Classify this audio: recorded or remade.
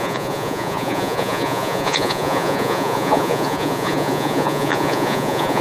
remade